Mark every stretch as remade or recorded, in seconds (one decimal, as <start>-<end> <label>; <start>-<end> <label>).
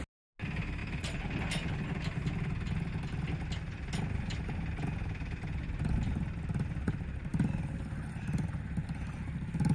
0.0-9.7 recorded